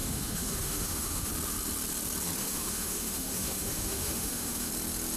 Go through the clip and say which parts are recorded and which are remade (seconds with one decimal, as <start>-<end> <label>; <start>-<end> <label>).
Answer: 0.0-1.3 remade; 1.3-2.4 recorded; 2.4-4.7 remade; 4.7-5.2 recorded